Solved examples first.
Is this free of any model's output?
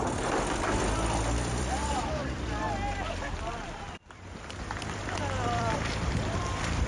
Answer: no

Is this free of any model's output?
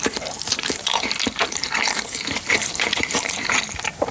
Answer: no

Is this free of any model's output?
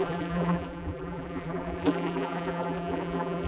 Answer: no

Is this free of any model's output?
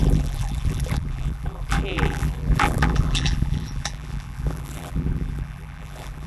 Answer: no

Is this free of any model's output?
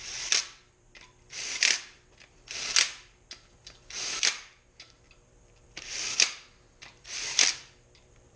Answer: no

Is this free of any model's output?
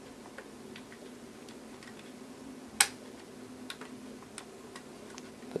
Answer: yes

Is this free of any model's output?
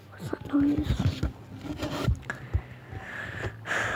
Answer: no